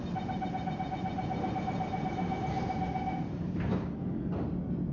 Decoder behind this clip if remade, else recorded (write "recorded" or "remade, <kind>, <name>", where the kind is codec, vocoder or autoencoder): recorded